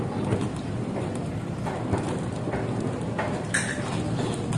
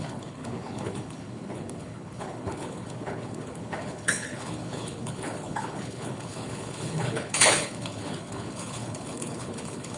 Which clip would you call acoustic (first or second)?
first